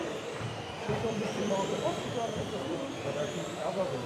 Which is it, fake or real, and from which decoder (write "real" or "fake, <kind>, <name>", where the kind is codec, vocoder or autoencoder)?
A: fake, vocoder, BigVGAN v2